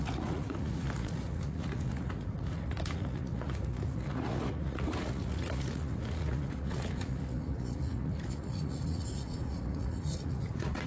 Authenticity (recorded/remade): remade